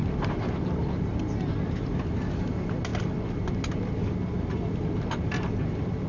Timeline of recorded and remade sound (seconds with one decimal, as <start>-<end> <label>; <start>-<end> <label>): 0.0-6.1 recorded